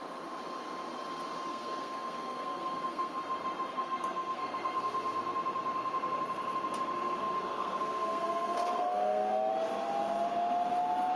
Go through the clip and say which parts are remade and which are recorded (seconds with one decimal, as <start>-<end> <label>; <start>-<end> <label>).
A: 0.0-1.5 recorded; 1.5-3.2 remade; 3.2-3.7 recorded; 3.7-4.8 remade; 4.8-7.2 recorded; 7.2-9.5 remade; 9.5-11.2 recorded